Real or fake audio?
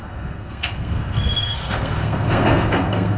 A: fake